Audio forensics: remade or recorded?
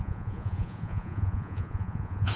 remade